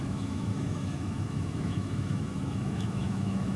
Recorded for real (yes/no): no